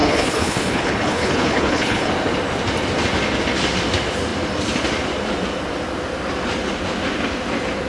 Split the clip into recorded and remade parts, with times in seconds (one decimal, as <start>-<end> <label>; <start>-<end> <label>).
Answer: 0.0-2.1 remade; 2.1-7.9 recorded